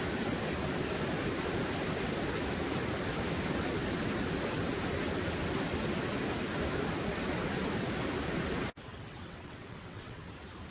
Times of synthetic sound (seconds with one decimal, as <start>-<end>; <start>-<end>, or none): 8.9-10.2